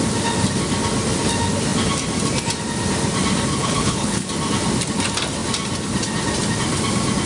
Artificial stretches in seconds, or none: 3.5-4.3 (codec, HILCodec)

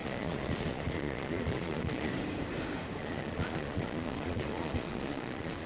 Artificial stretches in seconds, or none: 0.0-2.1 (vocoder, Vocos); 3.0-5.7

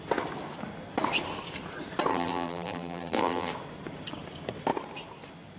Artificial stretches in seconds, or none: 2.1-3.5 (vocoder, BigVGAN v2)

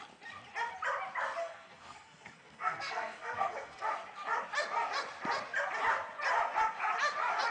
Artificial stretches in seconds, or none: 1.4-3.8 (codec, SNAC)

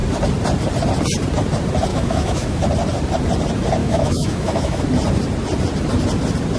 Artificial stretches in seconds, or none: 1.9-2.6 (autoencoder, DAC-VAE); 3.8-4.8

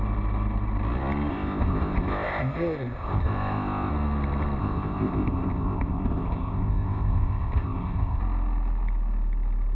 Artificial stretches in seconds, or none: 1.3-3.9 (codec, ZipCodec); 4.6-8.2